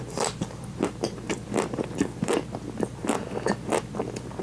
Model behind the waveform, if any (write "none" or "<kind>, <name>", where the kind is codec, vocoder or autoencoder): vocoder, BigVGAN v2